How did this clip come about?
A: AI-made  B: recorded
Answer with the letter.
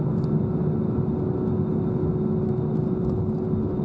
B